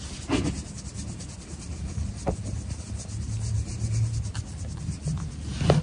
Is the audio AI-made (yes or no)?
no